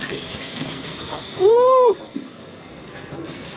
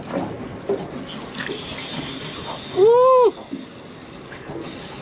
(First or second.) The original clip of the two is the second